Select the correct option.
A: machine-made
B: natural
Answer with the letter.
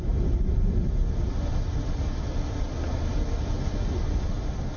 B